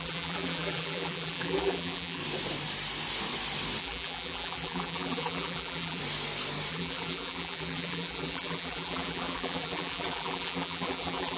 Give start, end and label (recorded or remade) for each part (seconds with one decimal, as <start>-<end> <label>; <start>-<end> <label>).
0.0-2.2 remade; 2.2-3.8 recorded; 3.8-6.0 remade; 6.0-6.7 recorded; 6.7-11.4 remade